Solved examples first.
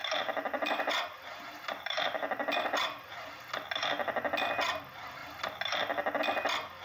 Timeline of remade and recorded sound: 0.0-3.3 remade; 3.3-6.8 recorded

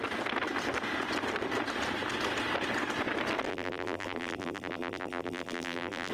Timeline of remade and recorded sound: 0.0-3.5 recorded; 3.5-6.1 remade

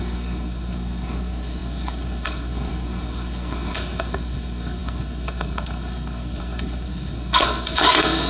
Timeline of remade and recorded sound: 0.0-8.3 remade

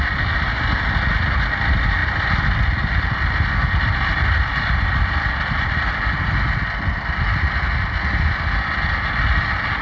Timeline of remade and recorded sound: 0.0-9.8 recorded

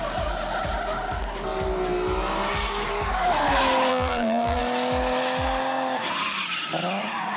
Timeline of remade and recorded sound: 0.0-3.9 recorded; 3.9-4.6 remade; 4.6-7.4 recorded

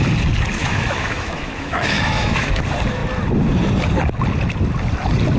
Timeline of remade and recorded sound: 0.0-0.6 recorded; 0.6-2.6 remade; 2.6-5.4 recorded